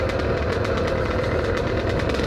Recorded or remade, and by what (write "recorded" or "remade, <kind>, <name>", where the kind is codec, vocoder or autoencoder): recorded